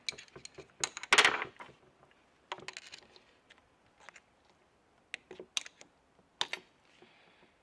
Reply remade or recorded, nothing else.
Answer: recorded